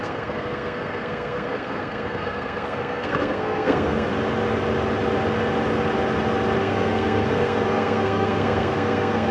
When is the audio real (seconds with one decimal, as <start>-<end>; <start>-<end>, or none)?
4.1-6.6